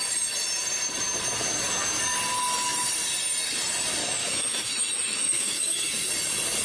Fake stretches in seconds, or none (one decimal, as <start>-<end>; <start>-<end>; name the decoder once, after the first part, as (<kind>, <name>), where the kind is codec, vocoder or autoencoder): 4.0-6.1 (autoencoder, DAC-VAE)